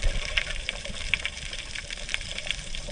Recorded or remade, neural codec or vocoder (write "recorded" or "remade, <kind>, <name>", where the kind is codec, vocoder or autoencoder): remade, vocoder, BigVGAN v2